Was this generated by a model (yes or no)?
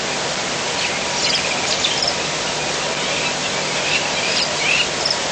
no